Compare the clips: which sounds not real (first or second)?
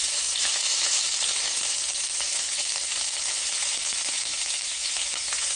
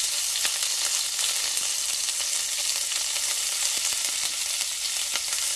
first